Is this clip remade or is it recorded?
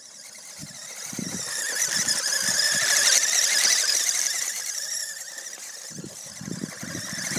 remade